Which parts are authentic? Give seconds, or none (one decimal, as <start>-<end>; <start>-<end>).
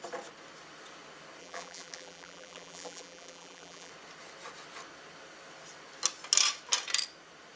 0.0-1.4; 3.9-7.6